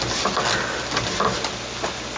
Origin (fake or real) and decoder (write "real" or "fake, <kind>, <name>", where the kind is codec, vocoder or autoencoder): real